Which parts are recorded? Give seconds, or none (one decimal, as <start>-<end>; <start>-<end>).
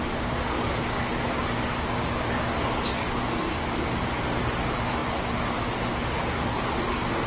0.0-7.3